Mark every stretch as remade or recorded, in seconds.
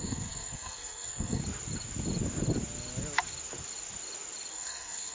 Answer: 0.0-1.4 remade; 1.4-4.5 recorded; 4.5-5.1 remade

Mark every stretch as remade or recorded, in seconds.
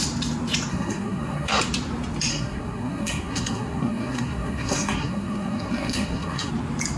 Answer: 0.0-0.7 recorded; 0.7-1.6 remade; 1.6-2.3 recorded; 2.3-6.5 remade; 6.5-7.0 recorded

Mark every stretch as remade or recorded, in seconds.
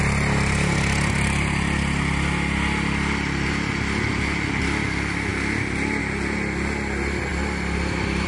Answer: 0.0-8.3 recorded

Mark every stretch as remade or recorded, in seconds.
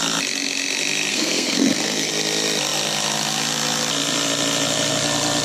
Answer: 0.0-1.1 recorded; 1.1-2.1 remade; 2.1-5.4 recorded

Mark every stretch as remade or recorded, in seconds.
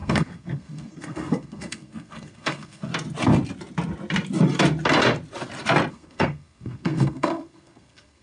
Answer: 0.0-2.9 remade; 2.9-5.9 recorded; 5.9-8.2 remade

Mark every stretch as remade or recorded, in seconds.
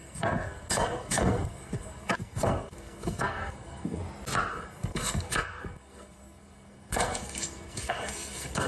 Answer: 0.0-4.0 remade; 4.0-4.5 recorded; 4.5-8.7 remade